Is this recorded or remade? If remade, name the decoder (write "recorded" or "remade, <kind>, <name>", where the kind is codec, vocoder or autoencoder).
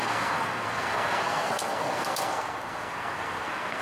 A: remade, codec, SNAC